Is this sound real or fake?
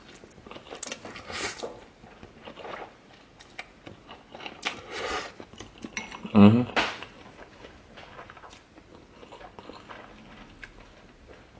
real